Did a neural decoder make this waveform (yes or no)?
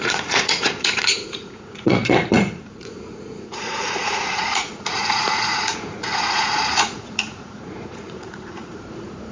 yes